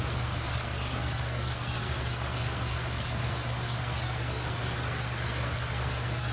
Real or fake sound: fake